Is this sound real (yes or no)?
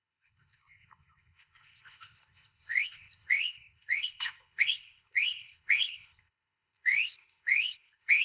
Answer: no